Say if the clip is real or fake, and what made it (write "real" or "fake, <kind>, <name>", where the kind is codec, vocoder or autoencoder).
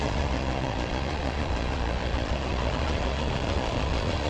fake, vocoder, Vocos